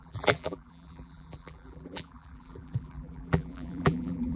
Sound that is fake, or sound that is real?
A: fake